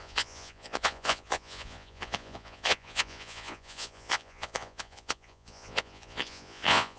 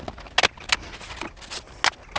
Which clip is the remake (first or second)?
first